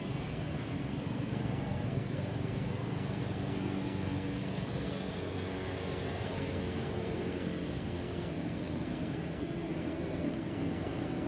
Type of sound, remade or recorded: remade